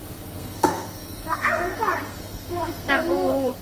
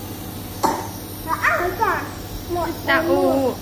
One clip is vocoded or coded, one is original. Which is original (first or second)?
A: second